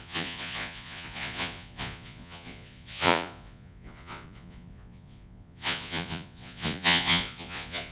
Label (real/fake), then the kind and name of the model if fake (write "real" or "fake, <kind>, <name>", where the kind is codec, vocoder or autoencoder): fake, vocoder, Vocos